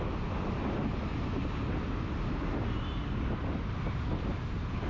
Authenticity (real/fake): real